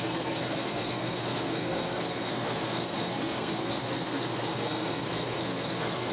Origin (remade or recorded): remade